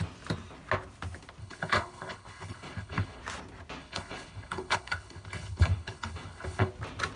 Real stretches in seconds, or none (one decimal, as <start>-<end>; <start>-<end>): 0.0-1.4; 3.2-3.8; 6.7-7.2